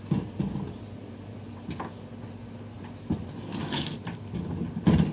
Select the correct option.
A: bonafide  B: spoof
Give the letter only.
A